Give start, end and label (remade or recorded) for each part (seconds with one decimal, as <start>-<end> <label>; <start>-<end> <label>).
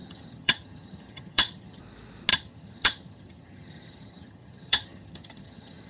0.0-1.8 remade; 1.8-2.3 recorded; 2.3-5.9 remade